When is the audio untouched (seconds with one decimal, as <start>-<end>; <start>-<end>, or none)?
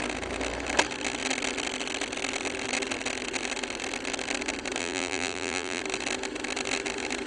0.0-4.8; 5.8-7.3